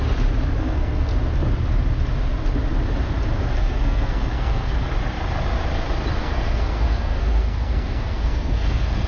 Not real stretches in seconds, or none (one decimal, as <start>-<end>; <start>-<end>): 0.6-1.1; 3.6-4.9; 6.2-9.1